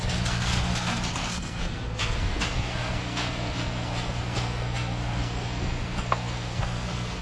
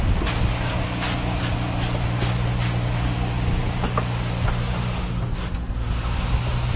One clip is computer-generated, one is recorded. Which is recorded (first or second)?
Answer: second